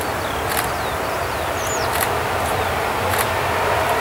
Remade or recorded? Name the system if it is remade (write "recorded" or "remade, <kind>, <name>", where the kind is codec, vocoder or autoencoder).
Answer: recorded